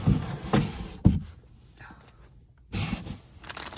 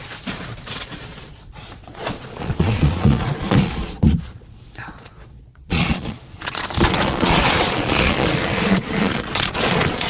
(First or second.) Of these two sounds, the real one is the first